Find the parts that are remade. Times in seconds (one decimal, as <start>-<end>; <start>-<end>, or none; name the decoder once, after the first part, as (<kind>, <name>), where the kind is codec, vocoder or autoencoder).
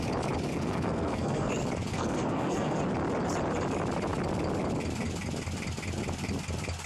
0.5-1.5 (codec, SNAC); 1.9-2.8